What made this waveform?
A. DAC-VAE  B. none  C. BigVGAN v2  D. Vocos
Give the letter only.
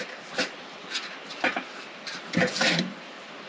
C